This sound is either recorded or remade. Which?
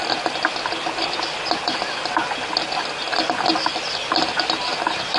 recorded